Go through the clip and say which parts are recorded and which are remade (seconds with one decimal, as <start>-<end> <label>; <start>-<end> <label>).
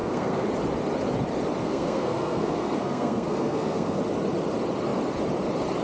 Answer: 0.0-0.5 remade; 0.5-1.6 recorded; 1.6-4.0 remade; 4.0-5.8 recorded